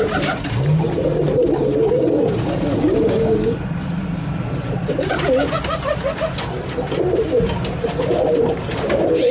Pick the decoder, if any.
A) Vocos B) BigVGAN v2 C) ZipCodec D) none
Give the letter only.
D